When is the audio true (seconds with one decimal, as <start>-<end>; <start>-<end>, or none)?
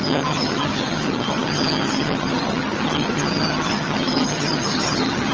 none